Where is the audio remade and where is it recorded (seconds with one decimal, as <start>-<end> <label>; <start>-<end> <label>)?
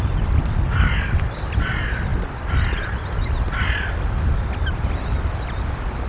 0.0-6.1 recorded